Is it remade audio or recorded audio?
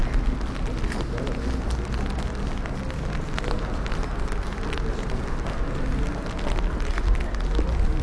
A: recorded